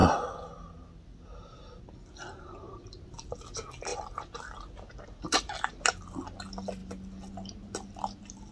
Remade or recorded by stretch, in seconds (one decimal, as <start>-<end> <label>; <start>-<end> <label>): 0.0-8.5 recorded